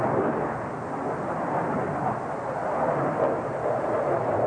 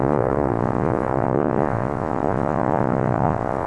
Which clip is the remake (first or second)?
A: second